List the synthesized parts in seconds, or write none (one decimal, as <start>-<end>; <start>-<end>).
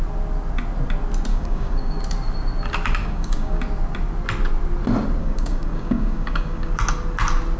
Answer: 1.3-2.0; 3.0-3.6; 5.2-6.7